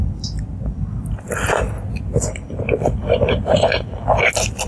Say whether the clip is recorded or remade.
recorded